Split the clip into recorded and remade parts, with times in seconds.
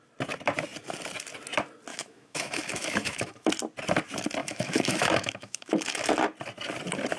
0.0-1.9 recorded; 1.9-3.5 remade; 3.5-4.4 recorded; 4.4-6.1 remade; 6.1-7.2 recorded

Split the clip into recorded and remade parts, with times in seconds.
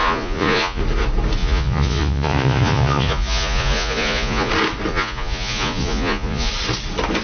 0.0-0.8 remade; 0.8-1.4 recorded; 1.4-4.5 remade; 4.5-4.9 recorded; 4.9-6.5 remade; 6.5-7.2 recorded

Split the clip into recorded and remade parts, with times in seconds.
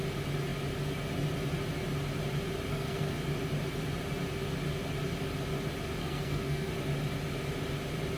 0.0-2.7 recorded; 2.7-3.2 remade; 3.2-6.0 recorded; 6.0-6.7 remade; 6.7-8.2 recorded